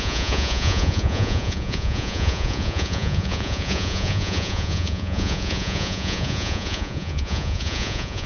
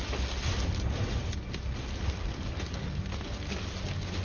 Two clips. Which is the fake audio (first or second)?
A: first